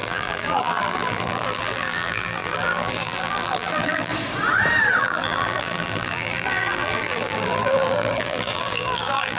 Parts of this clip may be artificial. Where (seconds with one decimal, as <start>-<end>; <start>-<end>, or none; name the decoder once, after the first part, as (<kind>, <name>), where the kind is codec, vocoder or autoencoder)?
0.0-4.1 (vocoder, BigVGAN v2); 5.0-9.4